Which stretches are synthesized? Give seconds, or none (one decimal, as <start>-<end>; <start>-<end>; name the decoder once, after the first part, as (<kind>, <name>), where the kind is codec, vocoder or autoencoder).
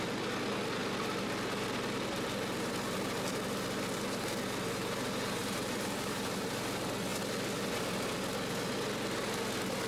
5.4-6.6 (vocoder, BigVGAN v2)